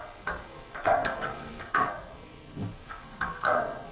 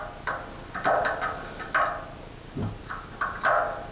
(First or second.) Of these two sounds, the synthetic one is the first